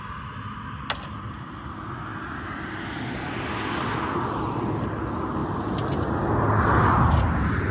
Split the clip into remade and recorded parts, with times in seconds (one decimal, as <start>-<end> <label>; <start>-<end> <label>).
0.0-7.7 recorded